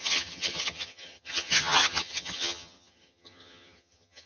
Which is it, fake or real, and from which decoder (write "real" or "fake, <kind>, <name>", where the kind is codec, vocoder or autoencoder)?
fake, vocoder, HiFi-GAN